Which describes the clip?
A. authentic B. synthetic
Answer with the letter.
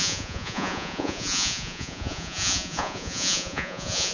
B